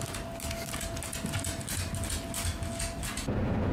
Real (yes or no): yes